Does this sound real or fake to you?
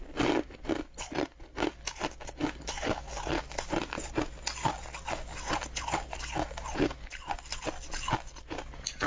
real